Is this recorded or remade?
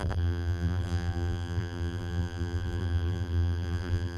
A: remade